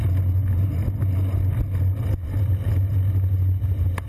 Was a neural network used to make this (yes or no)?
no